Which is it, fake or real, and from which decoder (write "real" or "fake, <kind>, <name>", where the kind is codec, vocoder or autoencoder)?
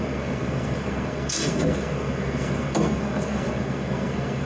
fake, codec, SNAC